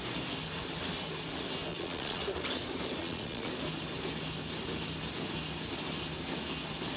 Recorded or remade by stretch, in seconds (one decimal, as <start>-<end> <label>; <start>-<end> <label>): 0.0-1.7 recorded; 1.7-2.2 remade; 2.2-3.0 recorded; 3.0-3.5 remade; 3.5-7.0 recorded